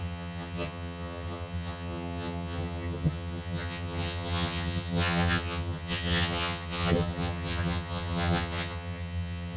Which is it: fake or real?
fake